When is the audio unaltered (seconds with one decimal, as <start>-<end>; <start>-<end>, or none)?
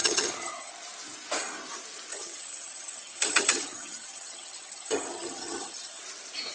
0.7-2.1; 6.0-6.5